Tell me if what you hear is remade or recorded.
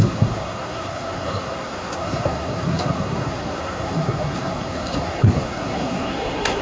remade